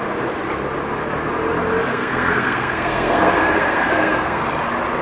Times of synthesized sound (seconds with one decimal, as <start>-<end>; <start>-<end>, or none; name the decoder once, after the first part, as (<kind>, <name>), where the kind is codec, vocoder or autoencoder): 1.9-4.4 (codec, SNAC)